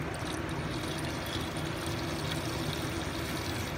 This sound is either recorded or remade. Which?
recorded